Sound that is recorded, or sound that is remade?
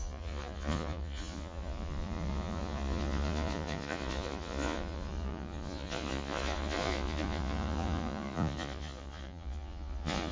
remade